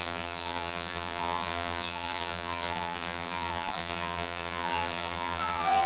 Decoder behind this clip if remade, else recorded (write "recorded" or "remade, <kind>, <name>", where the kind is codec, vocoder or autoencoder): remade, vocoder, BigVGAN v2